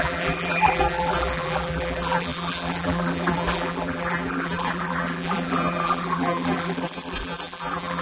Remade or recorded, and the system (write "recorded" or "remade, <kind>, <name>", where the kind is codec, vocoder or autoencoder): remade, vocoder, BigVGAN v2